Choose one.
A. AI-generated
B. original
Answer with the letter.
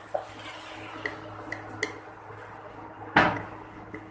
B